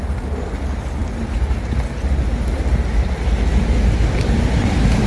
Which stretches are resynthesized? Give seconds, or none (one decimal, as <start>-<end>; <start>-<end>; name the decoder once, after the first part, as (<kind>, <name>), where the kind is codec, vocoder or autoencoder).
none